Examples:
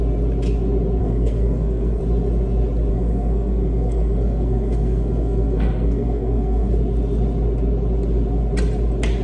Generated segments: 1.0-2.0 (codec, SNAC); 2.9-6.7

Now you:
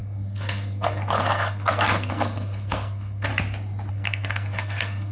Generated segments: 0.0-3.3 (codec, SNAC); 3.9-5.1

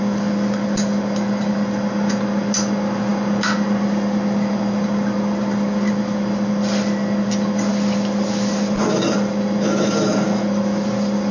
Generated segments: none